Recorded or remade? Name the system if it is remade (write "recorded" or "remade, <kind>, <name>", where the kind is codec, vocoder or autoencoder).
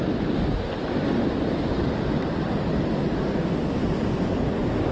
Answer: recorded